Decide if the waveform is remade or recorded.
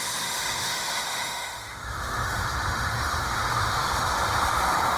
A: remade